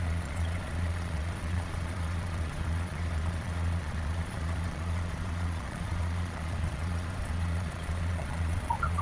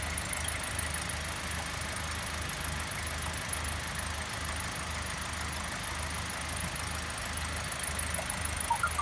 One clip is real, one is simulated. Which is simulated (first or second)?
first